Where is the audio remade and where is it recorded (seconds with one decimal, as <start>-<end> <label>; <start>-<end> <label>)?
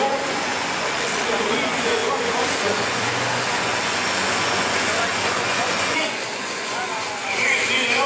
0.0-8.1 remade